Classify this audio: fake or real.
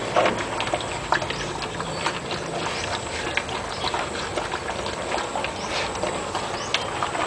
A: real